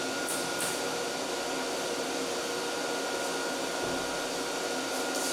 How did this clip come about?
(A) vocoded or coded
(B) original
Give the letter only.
B